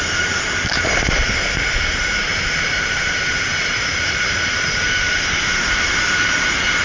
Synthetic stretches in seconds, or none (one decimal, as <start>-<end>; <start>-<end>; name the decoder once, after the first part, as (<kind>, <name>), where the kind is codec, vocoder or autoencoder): 0.0-6.8 (vocoder, BigVGAN v2)

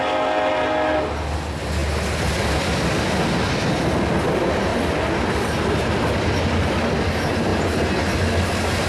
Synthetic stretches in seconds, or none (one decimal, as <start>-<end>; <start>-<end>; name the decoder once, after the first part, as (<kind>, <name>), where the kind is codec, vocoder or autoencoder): none

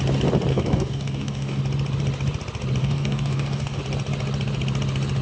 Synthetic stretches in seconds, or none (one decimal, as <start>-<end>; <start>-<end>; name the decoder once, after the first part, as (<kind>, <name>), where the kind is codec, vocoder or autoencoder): 0.5-1.6 (codec, DAC); 2.8-3.8